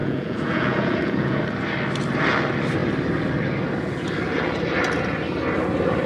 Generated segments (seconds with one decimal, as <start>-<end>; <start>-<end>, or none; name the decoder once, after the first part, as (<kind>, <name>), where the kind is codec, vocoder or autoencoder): 0.0-1.4 (vocoder, Vocos)

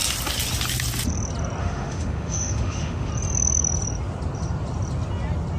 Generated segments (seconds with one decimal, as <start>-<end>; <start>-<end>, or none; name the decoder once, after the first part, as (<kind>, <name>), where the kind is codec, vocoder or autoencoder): 1.6-3.1 (autoencoder, DAC-VAE)

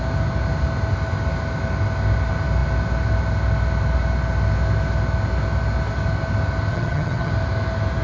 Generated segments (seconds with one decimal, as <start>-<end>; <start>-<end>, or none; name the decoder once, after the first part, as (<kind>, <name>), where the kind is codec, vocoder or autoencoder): 6.7-7.3 (vocoder, HiFi-GAN)

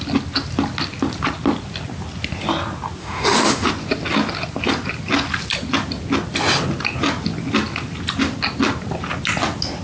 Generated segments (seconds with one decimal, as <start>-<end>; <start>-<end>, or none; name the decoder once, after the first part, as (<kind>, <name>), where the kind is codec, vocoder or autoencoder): 3.0-3.7 (autoencoder, DAC-VAE)